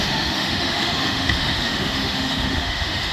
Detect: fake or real fake